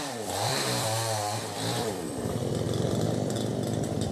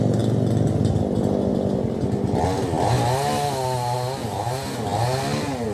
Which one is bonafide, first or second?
second